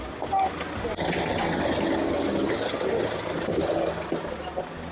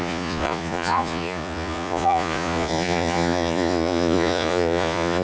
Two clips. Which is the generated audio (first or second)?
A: second